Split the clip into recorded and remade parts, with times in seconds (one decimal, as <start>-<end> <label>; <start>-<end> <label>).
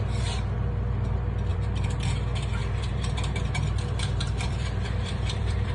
0.0-1.5 recorded; 1.5-2.0 remade; 2.0-2.6 recorded; 2.6-5.7 remade